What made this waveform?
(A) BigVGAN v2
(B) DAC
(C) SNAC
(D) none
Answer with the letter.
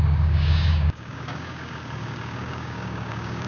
B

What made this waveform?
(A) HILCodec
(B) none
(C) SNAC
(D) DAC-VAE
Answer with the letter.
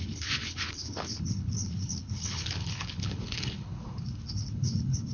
A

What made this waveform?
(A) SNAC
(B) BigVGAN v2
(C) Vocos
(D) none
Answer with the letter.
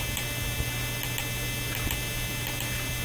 D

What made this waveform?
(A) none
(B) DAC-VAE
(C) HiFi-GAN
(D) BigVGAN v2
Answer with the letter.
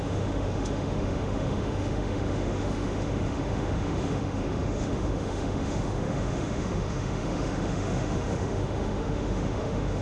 B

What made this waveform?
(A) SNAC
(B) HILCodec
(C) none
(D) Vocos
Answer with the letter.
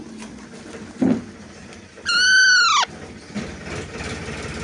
C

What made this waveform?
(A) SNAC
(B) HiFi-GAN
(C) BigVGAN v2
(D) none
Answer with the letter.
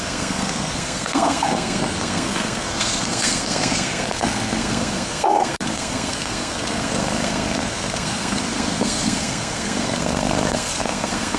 A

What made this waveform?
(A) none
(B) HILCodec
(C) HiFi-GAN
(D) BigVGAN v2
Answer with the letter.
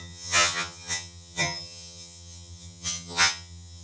C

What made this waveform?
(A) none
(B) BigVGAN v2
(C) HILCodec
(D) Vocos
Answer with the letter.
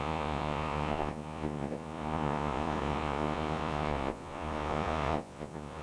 D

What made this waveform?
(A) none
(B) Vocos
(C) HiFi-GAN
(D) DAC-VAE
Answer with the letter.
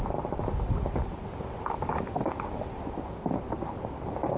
A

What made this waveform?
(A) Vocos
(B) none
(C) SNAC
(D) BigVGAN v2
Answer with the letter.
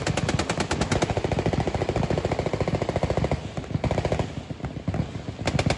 B